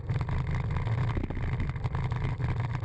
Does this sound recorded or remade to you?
recorded